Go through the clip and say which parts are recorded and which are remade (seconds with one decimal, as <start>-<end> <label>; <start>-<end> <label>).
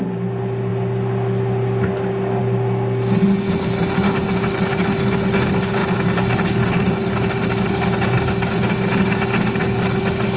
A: 0.0-10.4 recorded